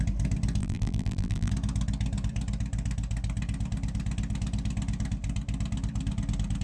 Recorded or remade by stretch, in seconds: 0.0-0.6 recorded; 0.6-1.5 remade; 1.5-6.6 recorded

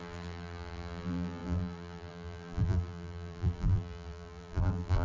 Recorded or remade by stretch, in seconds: 0.0-5.0 remade

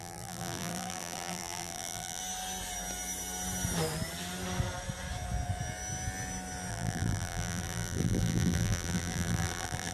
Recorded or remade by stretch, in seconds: 0.0-2.2 remade; 2.2-6.7 recorded; 6.7-9.9 remade

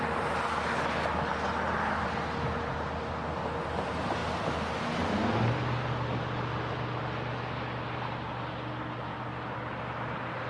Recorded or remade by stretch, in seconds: 0.0-10.5 recorded

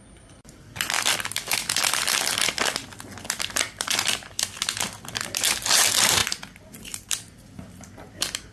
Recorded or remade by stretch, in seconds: 0.0-8.5 recorded